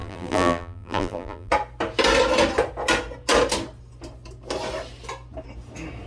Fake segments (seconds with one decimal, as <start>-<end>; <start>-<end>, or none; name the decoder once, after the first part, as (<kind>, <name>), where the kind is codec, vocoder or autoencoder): 0.0-1.5 (vocoder, BigVGAN v2)